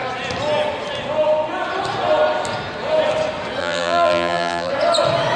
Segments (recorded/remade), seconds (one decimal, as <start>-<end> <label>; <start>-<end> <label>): 0.0-3.6 recorded; 3.6-4.7 remade; 4.7-5.4 recorded